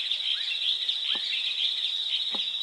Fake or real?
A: real